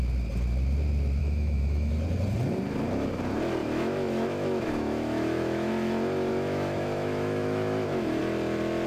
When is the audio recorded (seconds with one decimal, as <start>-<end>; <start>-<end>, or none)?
0.0-1.2; 1.9-3.6; 5.7-6.3; 8.2-8.9